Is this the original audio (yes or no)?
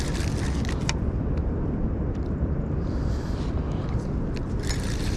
no